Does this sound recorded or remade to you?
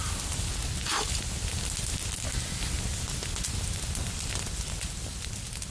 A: recorded